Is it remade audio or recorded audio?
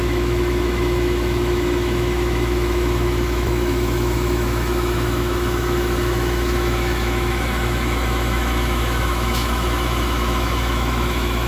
remade